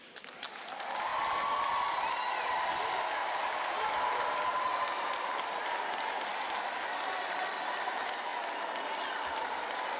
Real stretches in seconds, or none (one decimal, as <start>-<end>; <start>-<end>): 1.1-2.3; 3.2-4.0